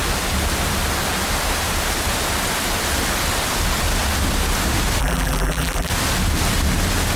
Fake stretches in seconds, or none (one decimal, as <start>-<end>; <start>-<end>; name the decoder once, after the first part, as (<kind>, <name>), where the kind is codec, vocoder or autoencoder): 5.0-5.9 (vocoder, BigVGAN v2)